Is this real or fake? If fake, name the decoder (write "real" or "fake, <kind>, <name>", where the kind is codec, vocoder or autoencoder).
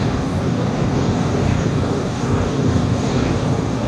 fake, codec, DAC